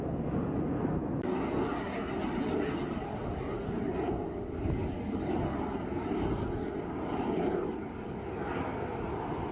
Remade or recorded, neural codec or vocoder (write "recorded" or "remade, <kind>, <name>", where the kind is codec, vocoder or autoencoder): recorded